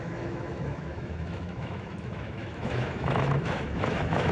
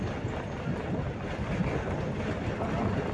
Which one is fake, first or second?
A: first